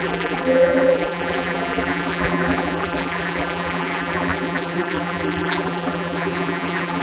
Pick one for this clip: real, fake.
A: fake